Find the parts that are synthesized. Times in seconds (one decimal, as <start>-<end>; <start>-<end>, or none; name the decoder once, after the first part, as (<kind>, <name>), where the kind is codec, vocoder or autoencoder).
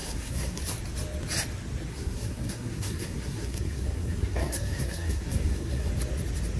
0.0-0.6 (codec, SNAC); 1.9-5.9